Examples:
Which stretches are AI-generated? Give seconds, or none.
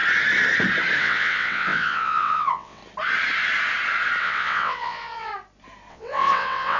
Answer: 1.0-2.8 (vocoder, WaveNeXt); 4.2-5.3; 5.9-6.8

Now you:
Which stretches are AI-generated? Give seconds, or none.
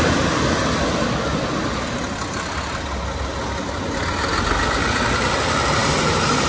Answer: none